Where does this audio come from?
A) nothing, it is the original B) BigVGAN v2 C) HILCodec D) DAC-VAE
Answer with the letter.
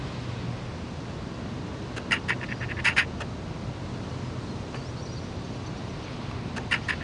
A